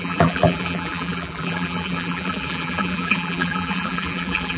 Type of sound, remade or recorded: remade